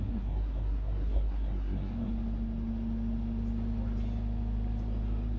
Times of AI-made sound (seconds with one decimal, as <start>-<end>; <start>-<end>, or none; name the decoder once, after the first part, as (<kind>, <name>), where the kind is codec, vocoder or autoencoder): 0.0-2.1 (codec, SNAC)